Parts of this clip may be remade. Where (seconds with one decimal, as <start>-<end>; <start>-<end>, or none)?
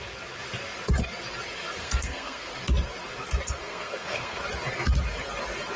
1.8-2.5; 3.6-4.4